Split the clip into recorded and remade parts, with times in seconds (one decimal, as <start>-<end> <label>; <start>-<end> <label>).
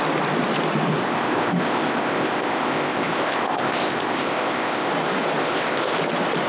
0.0-1.0 recorded; 1.0-4.9 remade; 4.9-5.4 recorded; 5.4-6.0 remade; 6.0-6.5 recorded